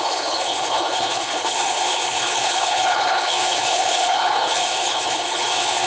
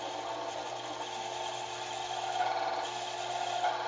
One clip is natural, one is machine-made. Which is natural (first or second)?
second